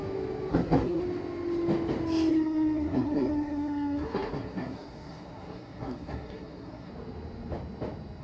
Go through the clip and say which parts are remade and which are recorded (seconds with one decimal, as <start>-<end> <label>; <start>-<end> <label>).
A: 0.0-0.5 recorded; 0.5-1.0 remade; 1.0-2.3 recorded; 2.3-6.9 remade; 6.9-8.2 recorded